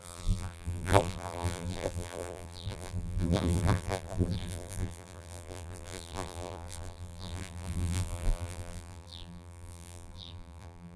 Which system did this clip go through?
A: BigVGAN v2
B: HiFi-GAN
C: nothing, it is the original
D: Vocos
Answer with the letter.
A